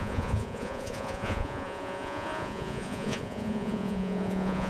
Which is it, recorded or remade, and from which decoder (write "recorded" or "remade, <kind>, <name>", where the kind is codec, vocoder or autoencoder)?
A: remade, vocoder, Vocos